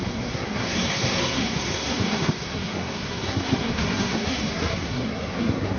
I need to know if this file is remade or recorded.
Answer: remade